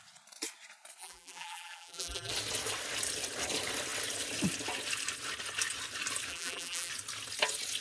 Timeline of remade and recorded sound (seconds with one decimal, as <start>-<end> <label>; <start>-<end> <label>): 0.0-1.0 recorded; 1.0-2.3 remade; 2.3-6.3 recorded; 6.3-6.9 remade; 6.9-7.8 recorded